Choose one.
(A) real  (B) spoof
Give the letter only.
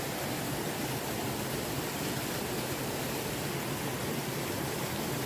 A